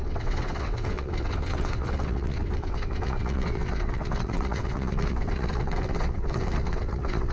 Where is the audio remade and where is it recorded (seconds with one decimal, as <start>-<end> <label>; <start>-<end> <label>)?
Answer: 0.0-7.3 remade